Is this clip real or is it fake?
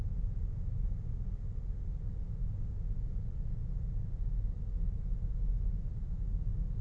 real